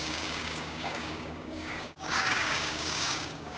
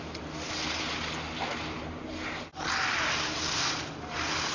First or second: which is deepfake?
first